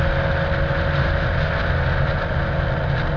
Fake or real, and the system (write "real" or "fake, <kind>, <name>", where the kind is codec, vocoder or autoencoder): real